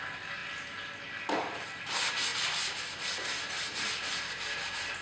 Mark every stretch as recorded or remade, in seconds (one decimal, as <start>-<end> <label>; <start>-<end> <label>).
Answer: 0.0-5.0 recorded